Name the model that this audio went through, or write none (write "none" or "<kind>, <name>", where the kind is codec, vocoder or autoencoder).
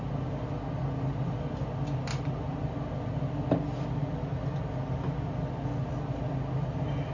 none